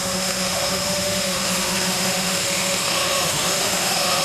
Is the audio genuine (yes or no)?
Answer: no